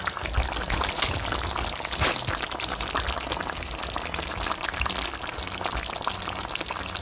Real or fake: real